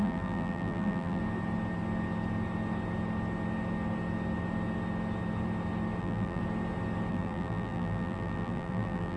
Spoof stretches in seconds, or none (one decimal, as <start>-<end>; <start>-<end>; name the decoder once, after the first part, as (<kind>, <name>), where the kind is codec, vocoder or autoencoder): 0.0-1.2 (vocoder, BigVGAN v2); 6.0-6.4; 7.1-9.2